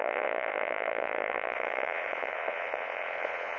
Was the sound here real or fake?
fake